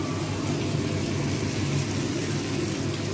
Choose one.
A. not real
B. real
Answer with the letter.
B